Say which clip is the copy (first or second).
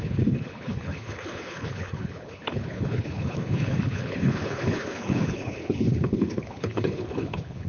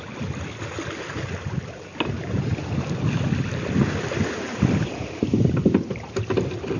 first